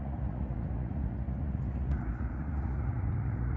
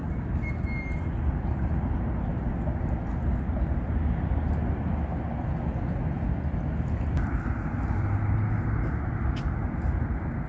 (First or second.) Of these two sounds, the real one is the second